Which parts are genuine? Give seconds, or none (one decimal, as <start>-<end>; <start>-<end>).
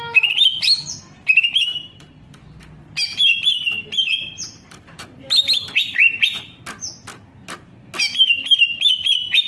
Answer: 0.0-1.7; 2.6-3.1; 6.6-9.5